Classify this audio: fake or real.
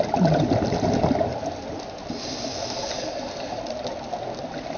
real